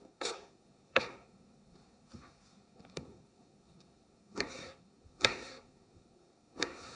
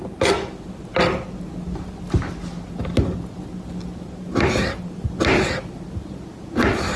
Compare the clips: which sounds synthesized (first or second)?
first